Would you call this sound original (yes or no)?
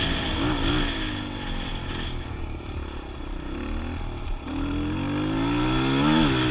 yes